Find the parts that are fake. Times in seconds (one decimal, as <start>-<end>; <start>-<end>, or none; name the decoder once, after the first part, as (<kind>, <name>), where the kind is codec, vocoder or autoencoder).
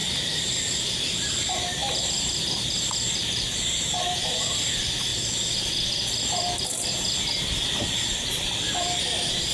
0.0-5.1 (vocoder, BigVGAN v2); 9.0-9.5